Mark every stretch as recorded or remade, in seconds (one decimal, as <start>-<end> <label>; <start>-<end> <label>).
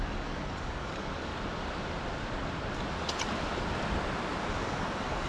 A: 0.0-1.3 remade; 1.3-4.5 recorded; 4.5-5.3 remade